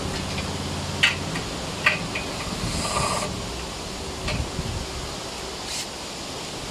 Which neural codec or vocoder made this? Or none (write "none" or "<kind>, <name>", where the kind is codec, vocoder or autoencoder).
none